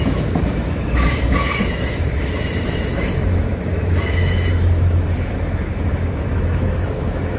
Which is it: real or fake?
fake